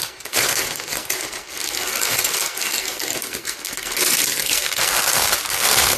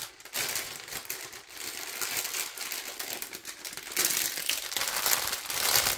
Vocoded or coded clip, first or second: first